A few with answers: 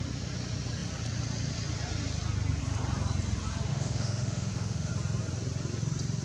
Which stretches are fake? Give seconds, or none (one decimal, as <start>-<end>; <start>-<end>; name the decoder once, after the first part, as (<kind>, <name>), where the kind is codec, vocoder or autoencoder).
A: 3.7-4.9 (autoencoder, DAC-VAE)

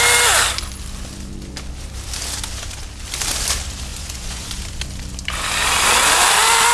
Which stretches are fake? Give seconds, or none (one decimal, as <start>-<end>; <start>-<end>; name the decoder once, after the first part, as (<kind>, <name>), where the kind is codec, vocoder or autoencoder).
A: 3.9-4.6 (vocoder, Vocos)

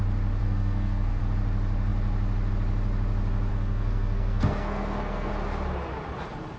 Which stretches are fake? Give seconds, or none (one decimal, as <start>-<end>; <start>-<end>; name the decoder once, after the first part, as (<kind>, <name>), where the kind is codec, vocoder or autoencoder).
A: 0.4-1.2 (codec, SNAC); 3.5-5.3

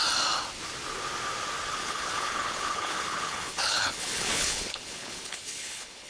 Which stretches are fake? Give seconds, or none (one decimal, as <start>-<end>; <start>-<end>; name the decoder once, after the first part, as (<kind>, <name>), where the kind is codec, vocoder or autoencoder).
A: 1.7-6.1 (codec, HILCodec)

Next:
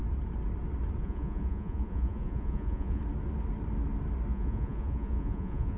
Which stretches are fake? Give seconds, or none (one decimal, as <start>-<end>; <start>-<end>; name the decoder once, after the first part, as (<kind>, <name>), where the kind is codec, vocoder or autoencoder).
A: 1.0-3.0 (vocoder, Vocos); 4.3-5.8

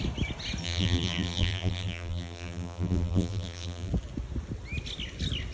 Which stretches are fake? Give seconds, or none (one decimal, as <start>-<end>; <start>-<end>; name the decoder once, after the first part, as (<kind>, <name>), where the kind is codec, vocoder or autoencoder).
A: 0.6-3.9 (vocoder, BigVGAN v2)

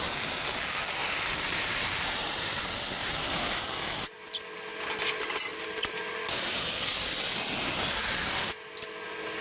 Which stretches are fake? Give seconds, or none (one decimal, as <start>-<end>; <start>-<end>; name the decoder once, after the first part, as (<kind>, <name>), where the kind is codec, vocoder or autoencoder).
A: 1.0-2.6 (vocoder, BigVGAN v2); 3.0-3.6; 5.5-6.2

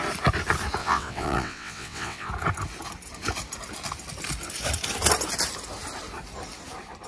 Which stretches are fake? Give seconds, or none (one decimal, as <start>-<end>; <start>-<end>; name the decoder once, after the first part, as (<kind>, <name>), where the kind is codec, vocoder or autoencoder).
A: 0.8-2.3 (vocoder, WaveNeXt)